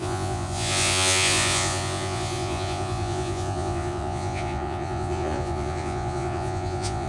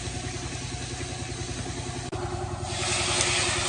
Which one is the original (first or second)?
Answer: second